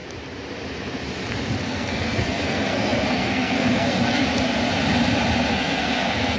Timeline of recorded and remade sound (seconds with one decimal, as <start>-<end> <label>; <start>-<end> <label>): 0.0-1.6 recorded; 1.6-4.2 remade; 4.2-5.5 recorded; 5.5-6.4 remade